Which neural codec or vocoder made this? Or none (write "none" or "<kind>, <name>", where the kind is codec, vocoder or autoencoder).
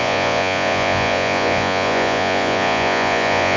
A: vocoder, Vocos